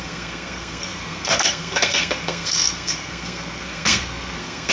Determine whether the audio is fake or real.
fake